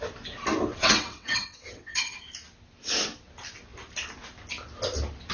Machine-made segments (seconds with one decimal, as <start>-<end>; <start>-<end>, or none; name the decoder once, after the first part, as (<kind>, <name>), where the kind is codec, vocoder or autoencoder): 0.7-2.0 (vocoder, WaveNeXt)